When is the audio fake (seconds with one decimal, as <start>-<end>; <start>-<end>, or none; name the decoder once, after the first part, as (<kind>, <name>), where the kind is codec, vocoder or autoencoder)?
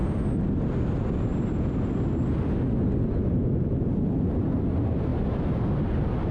none